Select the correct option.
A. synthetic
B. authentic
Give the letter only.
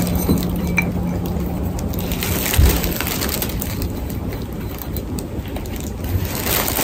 B